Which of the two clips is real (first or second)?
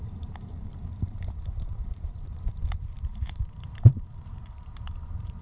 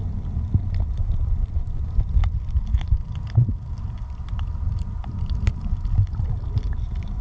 second